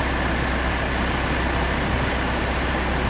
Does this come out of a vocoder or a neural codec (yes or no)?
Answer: no